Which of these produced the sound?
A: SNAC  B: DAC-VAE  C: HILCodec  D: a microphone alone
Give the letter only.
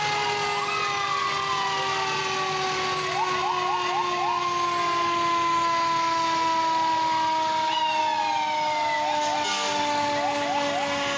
D